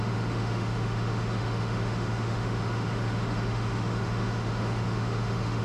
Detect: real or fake fake